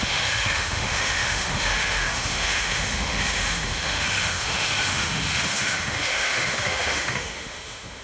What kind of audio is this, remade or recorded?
remade